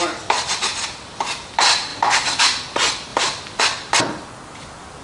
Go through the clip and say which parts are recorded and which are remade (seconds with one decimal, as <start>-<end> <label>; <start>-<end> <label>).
0.0-3.1 remade; 3.1-3.6 recorded; 3.6-5.0 remade